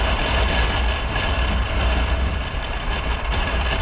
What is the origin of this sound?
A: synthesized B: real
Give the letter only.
A